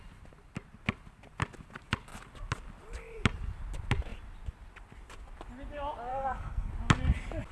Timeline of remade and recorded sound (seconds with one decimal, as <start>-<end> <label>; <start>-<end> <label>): 0.0-6.1 recorded; 6.1-6.7 remade; 6.7-7.5 recorded